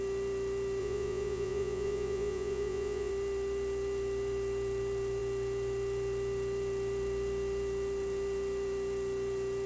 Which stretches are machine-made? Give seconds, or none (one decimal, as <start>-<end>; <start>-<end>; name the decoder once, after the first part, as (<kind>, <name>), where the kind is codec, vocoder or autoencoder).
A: 0.8-3.1 (vocoder, Vocos)